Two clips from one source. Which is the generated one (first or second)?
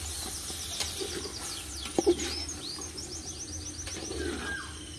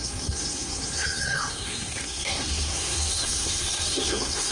second